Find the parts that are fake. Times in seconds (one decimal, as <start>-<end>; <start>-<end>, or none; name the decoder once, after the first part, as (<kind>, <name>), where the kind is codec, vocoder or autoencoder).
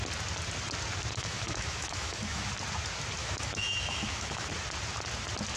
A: 1.1-2.5 (autoencoder, DAC-VAE); 3.2-4.5